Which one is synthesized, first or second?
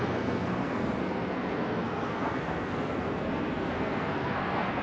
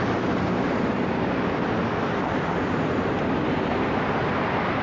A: first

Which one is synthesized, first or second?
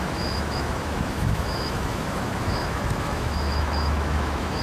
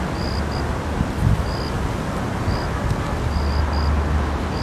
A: first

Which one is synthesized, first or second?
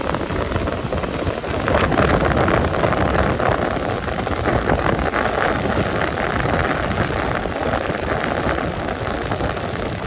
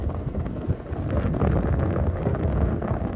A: second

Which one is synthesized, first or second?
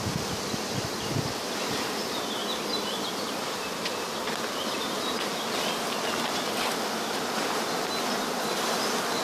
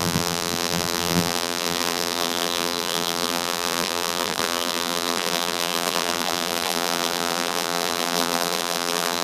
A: second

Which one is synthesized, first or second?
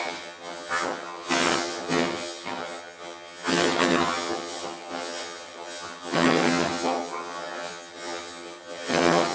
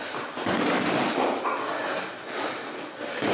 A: first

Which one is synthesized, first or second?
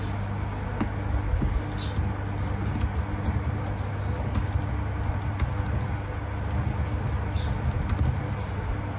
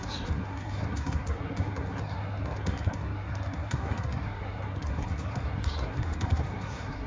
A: second